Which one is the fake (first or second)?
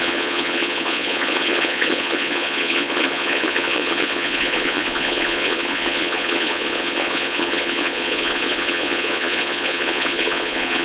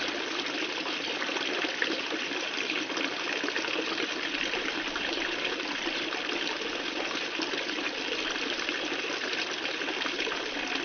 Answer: first